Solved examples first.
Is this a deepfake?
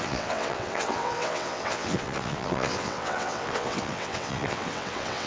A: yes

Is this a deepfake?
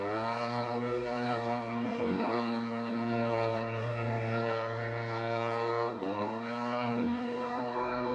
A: yes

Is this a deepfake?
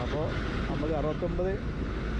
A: no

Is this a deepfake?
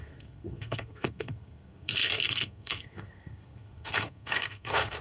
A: yes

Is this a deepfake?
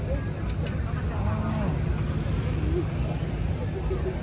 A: no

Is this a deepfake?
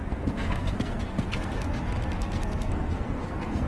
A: yes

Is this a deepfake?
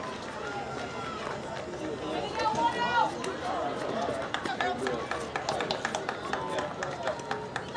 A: no